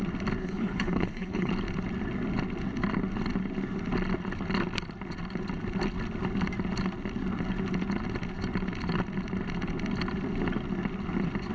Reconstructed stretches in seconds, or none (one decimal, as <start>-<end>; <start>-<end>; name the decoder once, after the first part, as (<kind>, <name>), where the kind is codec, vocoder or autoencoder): 0.4-1.5 (codec, HILCodec)